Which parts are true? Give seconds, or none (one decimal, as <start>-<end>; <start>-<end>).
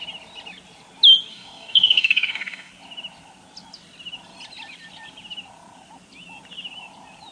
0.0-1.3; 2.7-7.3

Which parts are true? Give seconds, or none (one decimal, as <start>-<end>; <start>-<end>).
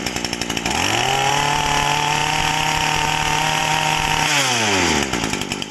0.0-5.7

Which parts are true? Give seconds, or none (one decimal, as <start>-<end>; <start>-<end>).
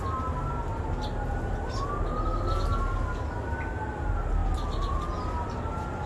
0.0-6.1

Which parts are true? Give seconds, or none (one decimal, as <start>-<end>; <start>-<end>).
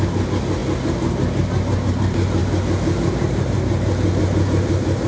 0.0-5.1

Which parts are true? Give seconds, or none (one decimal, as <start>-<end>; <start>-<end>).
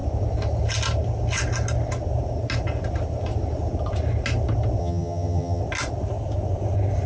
0.0-4.8; 5.6-7.1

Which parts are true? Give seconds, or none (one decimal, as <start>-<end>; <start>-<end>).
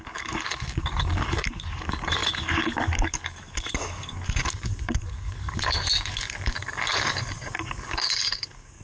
none